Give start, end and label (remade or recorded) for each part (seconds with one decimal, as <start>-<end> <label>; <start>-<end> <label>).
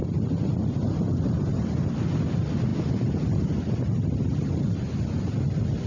0.0-5.9 recorded